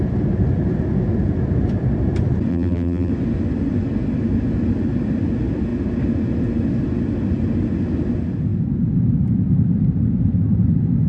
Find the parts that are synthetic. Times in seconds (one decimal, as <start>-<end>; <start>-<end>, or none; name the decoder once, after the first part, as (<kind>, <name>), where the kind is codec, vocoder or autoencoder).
2.5-3.1 (vocoder, BigVGAN v2)